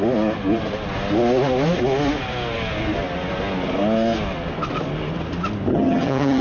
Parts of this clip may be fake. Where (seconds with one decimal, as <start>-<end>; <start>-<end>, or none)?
5.7-6.4